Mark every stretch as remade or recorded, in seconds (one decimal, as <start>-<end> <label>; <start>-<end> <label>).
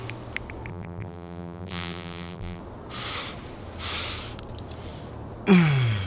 0.0-0.7 recorded; 0.7-2.6 remade; 2.6-6.1 recorded